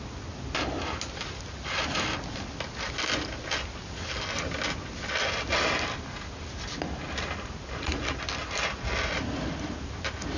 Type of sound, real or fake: real